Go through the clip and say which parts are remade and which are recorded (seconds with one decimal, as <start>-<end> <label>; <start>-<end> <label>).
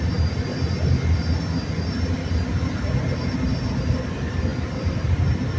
0.0-0.5 remade; 0.5-3.9 recorded; 3.9-5.6 remade